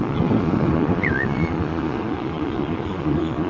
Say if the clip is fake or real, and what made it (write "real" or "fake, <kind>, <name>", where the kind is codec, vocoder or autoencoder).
fake, vocoder, Vocos